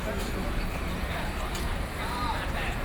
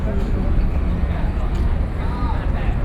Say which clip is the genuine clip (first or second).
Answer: second